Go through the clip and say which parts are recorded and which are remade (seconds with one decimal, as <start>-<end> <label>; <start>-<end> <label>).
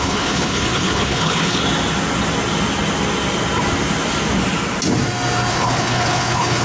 0.0-1.6 remade; 1.6-5.5 recorded; 5.5-6.6 remade